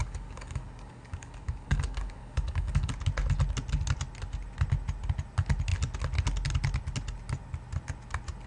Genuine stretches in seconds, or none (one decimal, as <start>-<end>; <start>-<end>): 2.9-8.5